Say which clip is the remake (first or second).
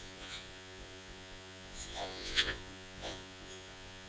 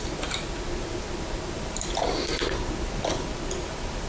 first